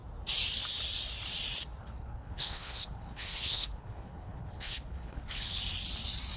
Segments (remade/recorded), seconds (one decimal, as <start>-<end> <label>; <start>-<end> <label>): 0.0-1.8 recorded; 1.8-5.6 remade; 5.6-6.4 recorded